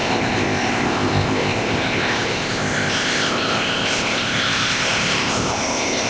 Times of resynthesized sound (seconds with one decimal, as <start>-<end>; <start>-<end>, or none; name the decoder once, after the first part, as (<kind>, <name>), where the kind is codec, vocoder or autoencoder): 0.0-6.1 (codec, ZipCodec)